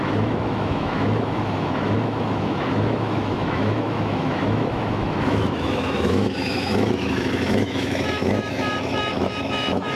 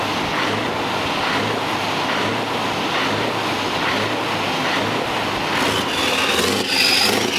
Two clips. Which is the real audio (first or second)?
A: second